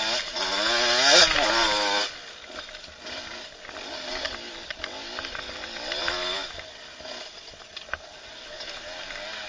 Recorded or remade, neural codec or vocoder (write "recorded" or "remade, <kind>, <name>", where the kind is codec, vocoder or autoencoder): recorded